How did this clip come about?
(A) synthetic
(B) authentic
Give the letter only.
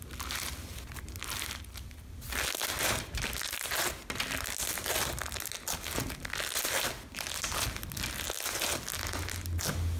B